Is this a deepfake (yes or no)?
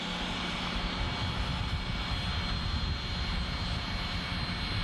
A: no